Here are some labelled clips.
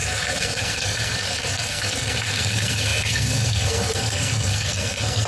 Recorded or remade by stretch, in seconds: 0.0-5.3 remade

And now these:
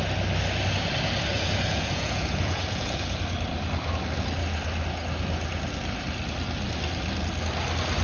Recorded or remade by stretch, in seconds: 0.0-1.3 recorded; 1.3-3.2 remade; 3.2-8.0 recorded

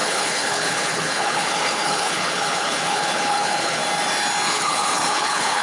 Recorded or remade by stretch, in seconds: 0.0-3.8 remade; 3.8-4.5 recorded; 4.5-5.6 remade